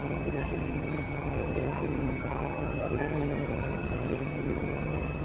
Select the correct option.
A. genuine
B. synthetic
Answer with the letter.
B